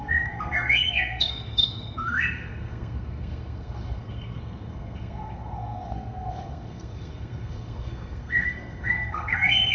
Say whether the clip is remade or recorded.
remade